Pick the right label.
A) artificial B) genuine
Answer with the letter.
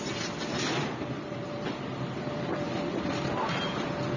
A